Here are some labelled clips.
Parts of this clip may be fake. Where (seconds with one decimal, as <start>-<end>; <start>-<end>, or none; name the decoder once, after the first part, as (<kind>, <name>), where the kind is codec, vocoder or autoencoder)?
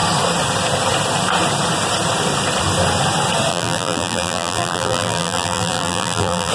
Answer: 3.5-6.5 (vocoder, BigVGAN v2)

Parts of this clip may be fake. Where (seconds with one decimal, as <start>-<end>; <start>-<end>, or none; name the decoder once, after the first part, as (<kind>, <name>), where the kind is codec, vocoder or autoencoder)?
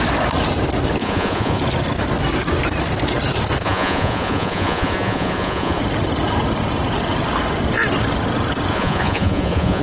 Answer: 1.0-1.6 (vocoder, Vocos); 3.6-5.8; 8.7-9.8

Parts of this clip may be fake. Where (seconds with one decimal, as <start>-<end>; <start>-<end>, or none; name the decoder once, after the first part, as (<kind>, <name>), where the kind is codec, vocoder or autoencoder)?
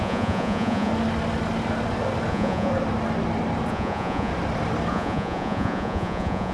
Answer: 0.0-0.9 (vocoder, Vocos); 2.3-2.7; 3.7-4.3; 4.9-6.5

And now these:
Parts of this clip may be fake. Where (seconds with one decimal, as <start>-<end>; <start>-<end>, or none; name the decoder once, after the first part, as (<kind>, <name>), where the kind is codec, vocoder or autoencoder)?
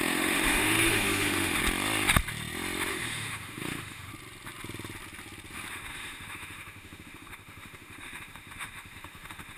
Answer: 0.0-1.6 (autoencoder, DAC-VAE); 2.9-4.1; 5.7-9.6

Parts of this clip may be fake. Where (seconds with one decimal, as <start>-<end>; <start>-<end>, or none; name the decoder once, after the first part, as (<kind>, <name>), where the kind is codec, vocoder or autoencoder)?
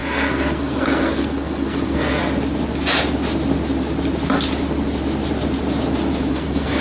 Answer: 0.0-2.2 (codec, SNAC); 6.3-6.8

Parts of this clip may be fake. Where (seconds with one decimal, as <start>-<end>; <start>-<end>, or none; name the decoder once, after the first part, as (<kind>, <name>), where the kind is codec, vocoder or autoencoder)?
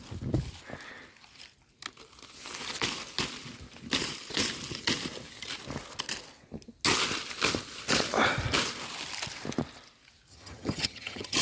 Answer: 10.3-11.4 (vocoder, HiFi-GAN)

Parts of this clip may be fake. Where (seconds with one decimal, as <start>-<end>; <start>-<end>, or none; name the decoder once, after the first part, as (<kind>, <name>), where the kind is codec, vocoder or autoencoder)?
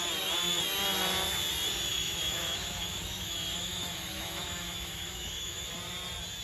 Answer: 1.9-5.7 (autoencoder, DAC-VAE)